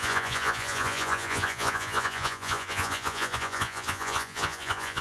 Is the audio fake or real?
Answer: fake